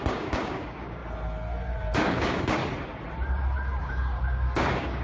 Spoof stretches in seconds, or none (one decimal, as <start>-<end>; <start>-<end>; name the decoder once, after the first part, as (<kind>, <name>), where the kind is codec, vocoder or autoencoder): 0.0-1.0 (codec, DAC); 1.8-2.6; 3.8-5.0

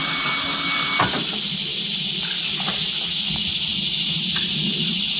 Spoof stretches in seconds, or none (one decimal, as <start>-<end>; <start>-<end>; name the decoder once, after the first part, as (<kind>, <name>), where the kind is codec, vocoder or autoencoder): none